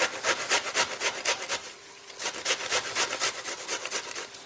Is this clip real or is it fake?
real